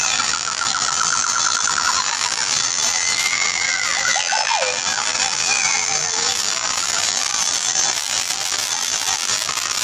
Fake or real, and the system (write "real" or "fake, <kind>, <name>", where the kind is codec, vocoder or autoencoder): fake, vocoder, BigVGAN v2